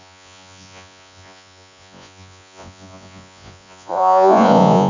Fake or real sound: fake